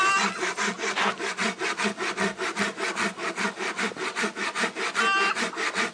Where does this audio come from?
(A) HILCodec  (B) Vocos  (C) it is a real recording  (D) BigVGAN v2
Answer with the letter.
C